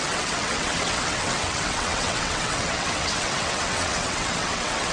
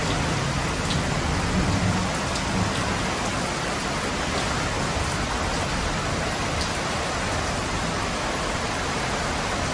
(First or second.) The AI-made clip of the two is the first